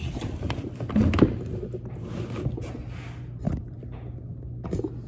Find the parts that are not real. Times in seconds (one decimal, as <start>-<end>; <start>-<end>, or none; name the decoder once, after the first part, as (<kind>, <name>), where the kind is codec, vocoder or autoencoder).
0.0-0.7 (vocoder, BigVGAN v2)